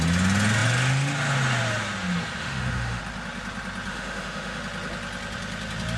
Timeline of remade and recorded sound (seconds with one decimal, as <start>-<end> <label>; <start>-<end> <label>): 0.0-2.4 recorded; 2.4-3.0 remade; 3.0-3.9 recorded; 3.9-4.6 remade; 4.6-6.0 recorded